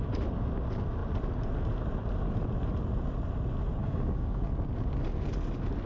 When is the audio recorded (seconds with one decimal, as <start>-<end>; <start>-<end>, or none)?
0.0-3.8; 4.4-5.9